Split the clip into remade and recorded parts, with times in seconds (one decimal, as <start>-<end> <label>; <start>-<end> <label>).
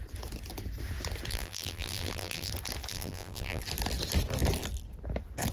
0.0-1.3 recorded; 1.3-2.5 remade; 2.5-2.9 recorded; 2.9-3.6 remade; 3.6-5.5 recorded